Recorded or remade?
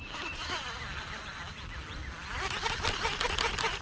recorded